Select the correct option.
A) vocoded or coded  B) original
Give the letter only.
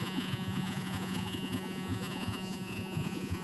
A